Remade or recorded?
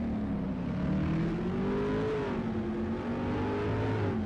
recorded